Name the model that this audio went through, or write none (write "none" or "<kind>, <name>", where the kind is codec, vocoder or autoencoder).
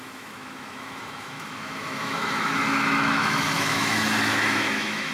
autoencoder, DAC-VAE